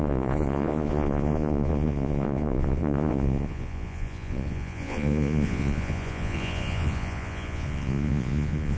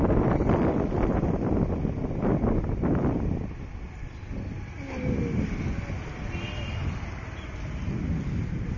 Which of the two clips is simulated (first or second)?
first